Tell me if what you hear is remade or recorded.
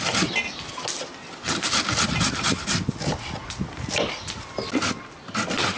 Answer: recorded